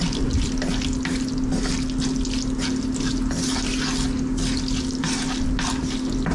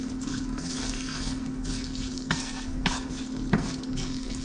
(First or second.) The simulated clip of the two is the second